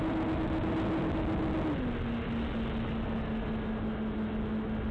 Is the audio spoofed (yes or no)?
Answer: no